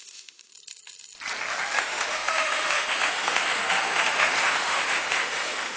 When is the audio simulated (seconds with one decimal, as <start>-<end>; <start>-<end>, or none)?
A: 0.0-0.5; 1.8-5.8